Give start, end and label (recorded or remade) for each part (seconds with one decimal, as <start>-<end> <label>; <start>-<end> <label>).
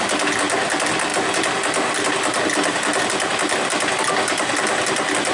0.0-5.3 recorded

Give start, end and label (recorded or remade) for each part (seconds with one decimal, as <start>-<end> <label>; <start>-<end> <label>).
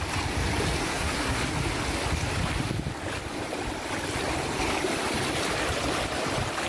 0.0-0.9 recorded; 0.9-1.4 remade; 1.4-6.7 recorded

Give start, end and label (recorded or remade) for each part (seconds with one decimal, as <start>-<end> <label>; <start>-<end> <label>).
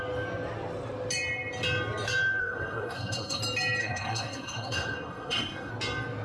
0.0-2.4 recorded; 2.4-3.4 remade; 3.4-3.8 recorded; 3.8-5.7 remade; 5.7-6.2 recorded